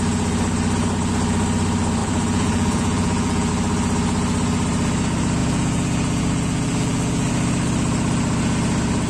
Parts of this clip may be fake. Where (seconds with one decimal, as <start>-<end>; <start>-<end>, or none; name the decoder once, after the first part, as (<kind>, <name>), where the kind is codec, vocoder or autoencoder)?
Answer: 2.0-3.5 (vocoder, BigVGAN v2); 5.4-7.3